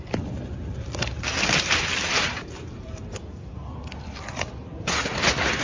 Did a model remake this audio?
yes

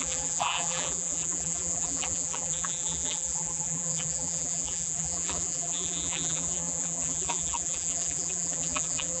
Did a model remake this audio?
yes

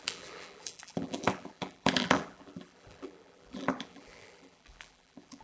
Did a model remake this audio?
yes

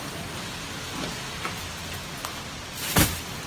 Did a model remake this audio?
no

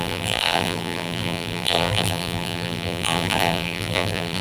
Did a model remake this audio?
yes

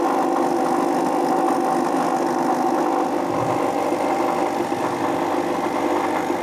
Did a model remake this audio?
no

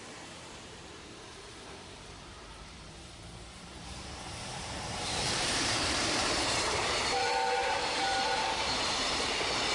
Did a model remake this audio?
yes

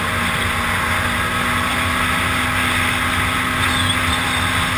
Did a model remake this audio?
no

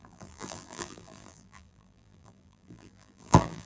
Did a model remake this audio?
yes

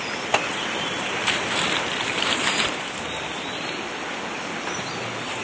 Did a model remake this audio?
yes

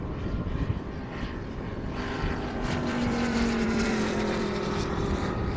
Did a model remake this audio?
yes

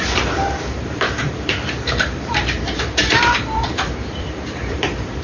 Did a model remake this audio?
yes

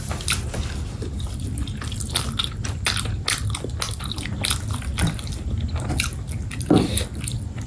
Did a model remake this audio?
no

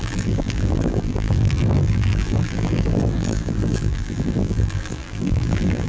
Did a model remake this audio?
yes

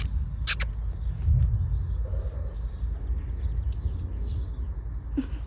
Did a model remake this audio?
no